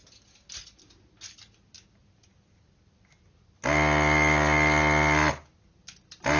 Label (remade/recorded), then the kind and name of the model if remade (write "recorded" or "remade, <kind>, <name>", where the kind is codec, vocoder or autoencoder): recorded